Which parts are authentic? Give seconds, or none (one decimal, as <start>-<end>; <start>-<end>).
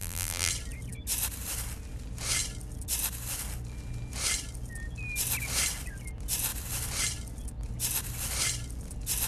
0.5-9.3